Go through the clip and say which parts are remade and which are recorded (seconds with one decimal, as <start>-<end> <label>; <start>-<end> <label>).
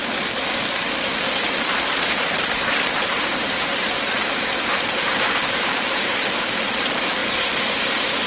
0.0-1.1 recorded; 1.1-6.1 remade; 6.1-7.2 recorded; 7.2-7.7 remade; 7.7-8.3 recorded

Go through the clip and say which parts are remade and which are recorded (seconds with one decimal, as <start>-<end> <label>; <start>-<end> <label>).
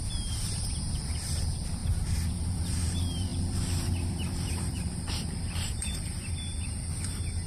0.0-1.8 remade; 1.8-2.3 recorded; 2.3-7.5 remade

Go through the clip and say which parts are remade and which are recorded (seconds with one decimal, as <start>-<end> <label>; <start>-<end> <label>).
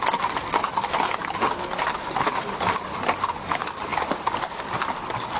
0.0-5.4 recorded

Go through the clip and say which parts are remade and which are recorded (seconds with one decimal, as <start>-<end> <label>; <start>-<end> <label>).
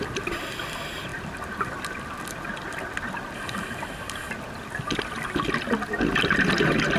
0.0-1.1 recorded; 1.1-4.4 remade; 4.4-7.0 recorded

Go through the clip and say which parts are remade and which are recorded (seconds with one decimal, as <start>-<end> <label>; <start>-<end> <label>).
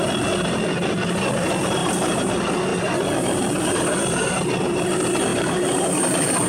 0.0-1.8 recorded; 1.8-2.3 remade; 2.3-5.3 recorded; 5.3-6.5 remade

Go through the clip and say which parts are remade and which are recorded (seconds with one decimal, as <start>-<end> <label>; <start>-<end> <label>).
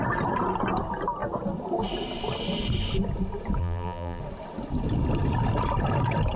0.0-3.6 recorded; 3.6-4.2 remade; 4.2-6.4 recorded